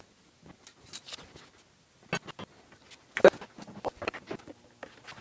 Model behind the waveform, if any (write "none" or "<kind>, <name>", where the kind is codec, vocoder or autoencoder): none